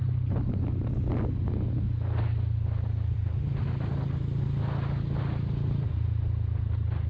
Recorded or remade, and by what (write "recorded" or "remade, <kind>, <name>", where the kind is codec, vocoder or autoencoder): recorded